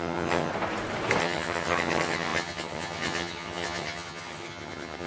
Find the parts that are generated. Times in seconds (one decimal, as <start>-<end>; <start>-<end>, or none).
0.0-0.5; 1.2-5.1